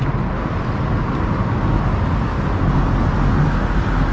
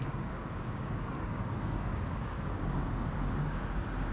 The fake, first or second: second